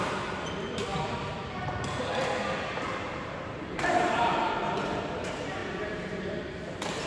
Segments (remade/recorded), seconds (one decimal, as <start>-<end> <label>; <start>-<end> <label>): 0.0-0.9 remade; 0.9-2.6 recorded; 2.6-7.1 remade